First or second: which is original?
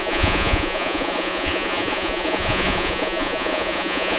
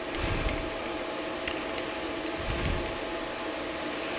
second